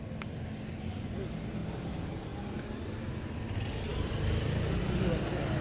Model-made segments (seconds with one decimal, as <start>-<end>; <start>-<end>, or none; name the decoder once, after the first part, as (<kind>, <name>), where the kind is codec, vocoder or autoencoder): 3.9-4.8 (vocoder, BigVGAN v2)